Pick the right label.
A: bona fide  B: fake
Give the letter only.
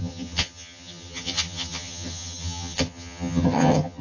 B